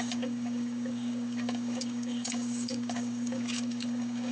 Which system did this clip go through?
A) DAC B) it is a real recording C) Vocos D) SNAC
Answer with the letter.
A